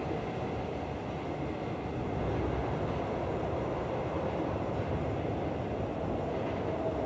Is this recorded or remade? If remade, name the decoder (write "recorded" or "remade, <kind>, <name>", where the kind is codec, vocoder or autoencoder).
recorded